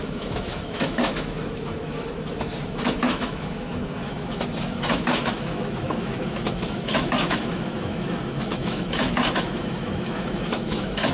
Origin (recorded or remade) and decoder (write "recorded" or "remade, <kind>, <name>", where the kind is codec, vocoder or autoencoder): remade, autoencoder, DAC-VAE